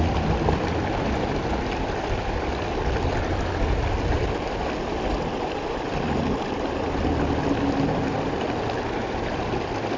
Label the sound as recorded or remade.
recorded